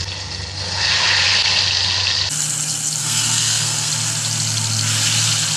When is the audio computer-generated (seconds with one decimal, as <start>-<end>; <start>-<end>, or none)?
3.0-3.9